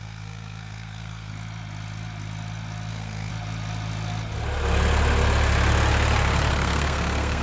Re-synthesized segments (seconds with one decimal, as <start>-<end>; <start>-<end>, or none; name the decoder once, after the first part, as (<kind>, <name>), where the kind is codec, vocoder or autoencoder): 0.0-1.3 (codec, SNAC); 2.9-3.3; 6.5-7.4